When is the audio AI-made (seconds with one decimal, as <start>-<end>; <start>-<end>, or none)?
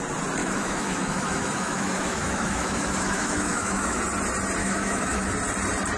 0.4-4.0; 4.6-5.3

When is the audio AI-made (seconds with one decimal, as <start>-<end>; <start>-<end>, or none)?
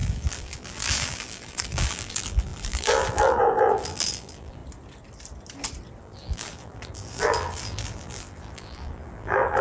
0.0-4.6; 6.0-9.6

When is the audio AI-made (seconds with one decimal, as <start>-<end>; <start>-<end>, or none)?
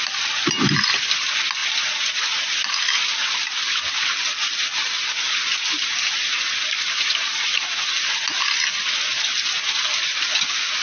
none